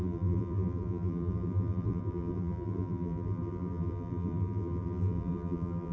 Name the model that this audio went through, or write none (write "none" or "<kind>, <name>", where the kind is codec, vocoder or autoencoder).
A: vocoder, BigVGAN v2